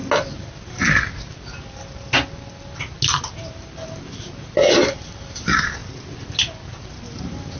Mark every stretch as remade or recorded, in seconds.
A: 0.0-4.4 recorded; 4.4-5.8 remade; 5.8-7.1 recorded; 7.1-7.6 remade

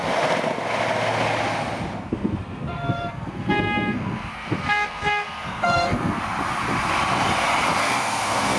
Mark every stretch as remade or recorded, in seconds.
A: 0.0-2.1 recorded; 2.1-6.2 remade; 6.2-7.8 recorded; 7.8-8.6 remade

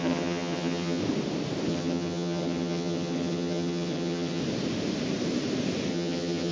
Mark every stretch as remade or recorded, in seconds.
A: 0.0-1.0 remade; 1.0-1.7 recorded; 1.7-4.4 remade; 4.4-5.9 recorded; 5.9-6.5 remade

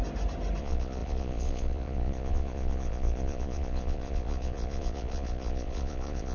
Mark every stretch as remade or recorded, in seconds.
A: 0.0-0.6 recorded; 0.6-6.3 remade

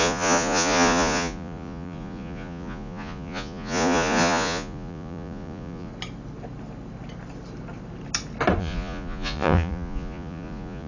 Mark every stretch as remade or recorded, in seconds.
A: 0.0-5.9 remade; 5.9-8.6 recorded; 8.6-10.9 remade